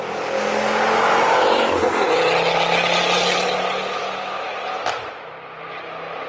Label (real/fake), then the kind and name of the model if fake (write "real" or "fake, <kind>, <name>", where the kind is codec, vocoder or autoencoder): real